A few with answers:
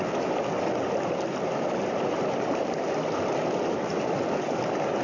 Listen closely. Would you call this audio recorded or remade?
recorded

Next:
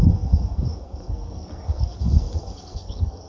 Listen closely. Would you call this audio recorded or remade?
remade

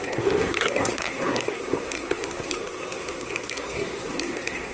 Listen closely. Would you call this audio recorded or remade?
remade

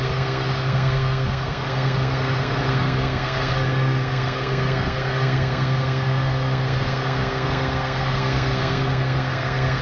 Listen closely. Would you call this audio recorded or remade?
remade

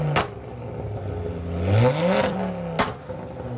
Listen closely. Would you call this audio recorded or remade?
recorded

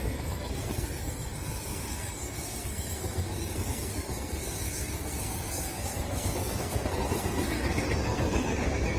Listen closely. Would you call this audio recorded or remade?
remade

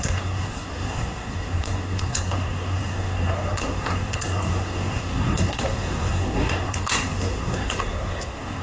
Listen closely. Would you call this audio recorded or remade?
remade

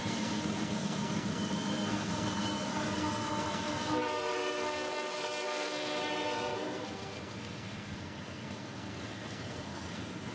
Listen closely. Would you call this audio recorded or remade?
remade